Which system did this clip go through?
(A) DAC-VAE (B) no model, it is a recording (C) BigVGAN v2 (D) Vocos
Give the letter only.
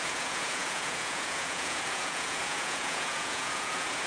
D